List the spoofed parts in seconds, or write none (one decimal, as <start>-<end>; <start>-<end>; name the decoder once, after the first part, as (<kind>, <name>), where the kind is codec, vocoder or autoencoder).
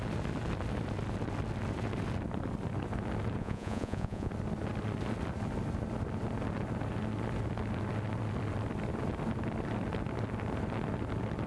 3.4-4.3 (vocoder, Vocos)